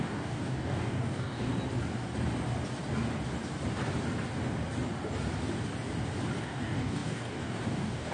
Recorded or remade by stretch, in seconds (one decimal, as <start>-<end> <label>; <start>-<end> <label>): 0.0-1.5 remade; 1.5-6.4 recorded; 6.4-8.1 remade